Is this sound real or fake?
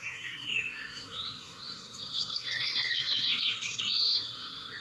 fake